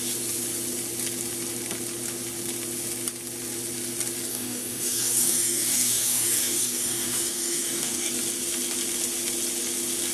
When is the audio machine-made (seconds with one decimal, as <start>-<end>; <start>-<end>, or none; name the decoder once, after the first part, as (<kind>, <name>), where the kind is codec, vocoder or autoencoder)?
4.3-8.1 (codec, DAC)